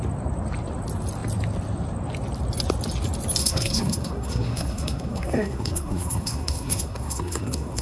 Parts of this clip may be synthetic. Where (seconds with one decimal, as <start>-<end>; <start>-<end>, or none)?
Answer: 3.4-7.8